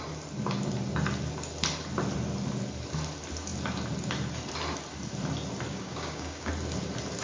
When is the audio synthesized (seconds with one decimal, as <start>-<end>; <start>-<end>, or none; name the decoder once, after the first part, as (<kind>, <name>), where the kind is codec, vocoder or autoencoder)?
5.7-6.5 (codec, DAC)